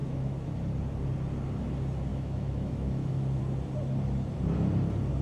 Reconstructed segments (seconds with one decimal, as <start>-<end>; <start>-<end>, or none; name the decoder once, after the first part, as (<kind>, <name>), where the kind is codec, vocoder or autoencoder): 0.0-0.5 (autoencoder, DAC-VAE); 2.1-3.4